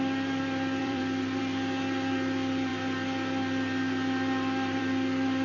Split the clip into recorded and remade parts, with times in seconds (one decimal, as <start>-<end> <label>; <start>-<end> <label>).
0.0-0.8 recorded; 0.8-1.4 remade; 1.4-5.4 recorded